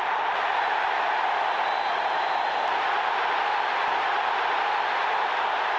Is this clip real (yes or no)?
yes